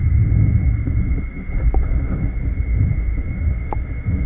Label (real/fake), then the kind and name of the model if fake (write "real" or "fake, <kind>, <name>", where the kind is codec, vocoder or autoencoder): real